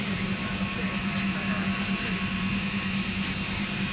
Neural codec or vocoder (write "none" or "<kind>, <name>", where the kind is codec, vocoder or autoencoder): vocoder, BigVGAN v2